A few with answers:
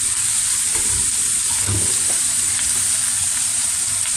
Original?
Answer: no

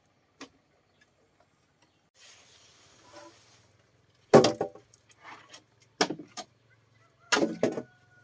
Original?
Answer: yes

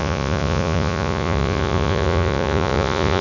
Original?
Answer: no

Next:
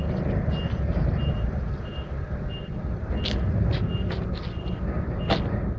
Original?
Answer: yes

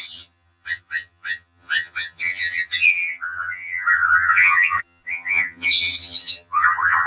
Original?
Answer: no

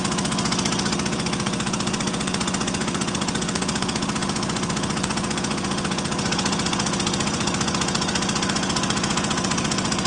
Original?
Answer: no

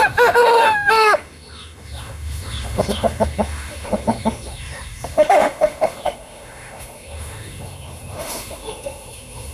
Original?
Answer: no